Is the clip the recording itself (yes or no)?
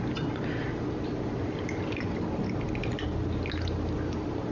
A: yes